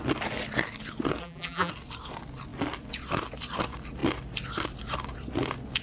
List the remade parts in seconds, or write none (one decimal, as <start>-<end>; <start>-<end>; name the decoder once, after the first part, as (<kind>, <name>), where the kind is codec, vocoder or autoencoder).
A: 1.2-1.7 (vocoder, BigVGAN v2)